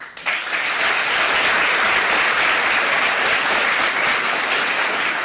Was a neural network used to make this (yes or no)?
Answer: no